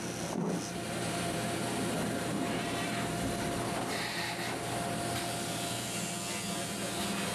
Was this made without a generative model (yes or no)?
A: yes